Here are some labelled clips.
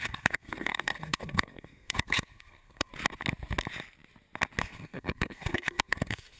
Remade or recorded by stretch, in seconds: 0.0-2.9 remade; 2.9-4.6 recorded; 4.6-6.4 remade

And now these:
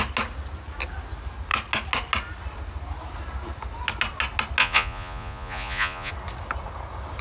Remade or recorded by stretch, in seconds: 0.0-4.6 recorded; 4.6-6.1 remade; 6.1-7.2 recorded